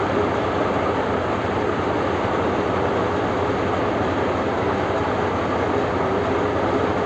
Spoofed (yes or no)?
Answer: no